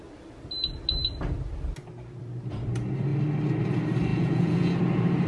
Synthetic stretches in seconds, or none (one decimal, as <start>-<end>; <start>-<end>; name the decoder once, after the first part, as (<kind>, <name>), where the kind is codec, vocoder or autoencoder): 4.1-4.8 (vocoder, Vocos)